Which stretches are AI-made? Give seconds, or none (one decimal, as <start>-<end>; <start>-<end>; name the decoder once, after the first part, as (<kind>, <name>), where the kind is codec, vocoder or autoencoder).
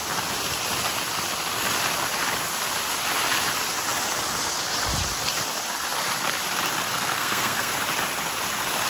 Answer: 6.9-7.7 (codec, SNAC)